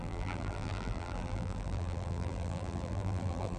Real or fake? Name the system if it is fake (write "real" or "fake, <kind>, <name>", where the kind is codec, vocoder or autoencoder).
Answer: fake, vocoder, BigVGAN v2